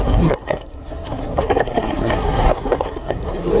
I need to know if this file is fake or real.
fake